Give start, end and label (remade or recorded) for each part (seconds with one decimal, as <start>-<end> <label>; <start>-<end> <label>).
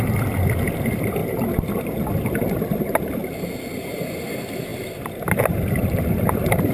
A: 0.0-6.7 recorded